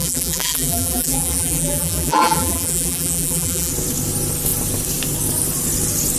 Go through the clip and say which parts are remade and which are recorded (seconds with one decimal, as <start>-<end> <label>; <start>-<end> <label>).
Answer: 0.0-3.7 remade; 3.7-6.2 recorded